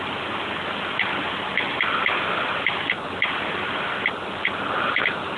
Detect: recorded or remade recorded